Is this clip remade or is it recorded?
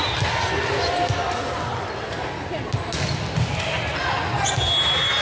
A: recorded